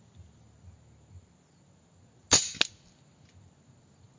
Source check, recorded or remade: recorded